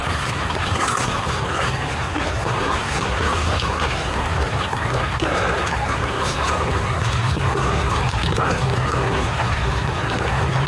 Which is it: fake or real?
fake